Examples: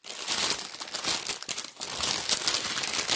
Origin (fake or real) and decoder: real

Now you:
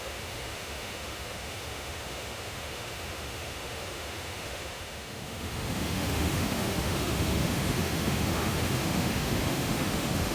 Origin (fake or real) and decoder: fake, autoencoder, DAC-VAE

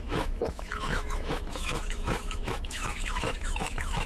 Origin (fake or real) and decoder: fake, autoencoder, DAC-VAE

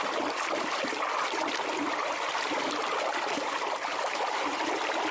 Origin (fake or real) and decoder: real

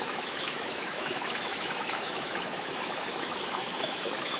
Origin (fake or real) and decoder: fake, autoencoder, DAC-VAE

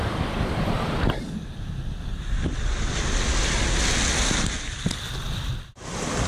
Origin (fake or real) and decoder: real